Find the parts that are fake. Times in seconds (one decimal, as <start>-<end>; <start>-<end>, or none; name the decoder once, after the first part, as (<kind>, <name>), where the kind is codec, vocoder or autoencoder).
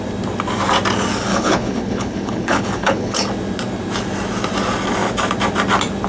1.3-3.2 (codec, HILCodec)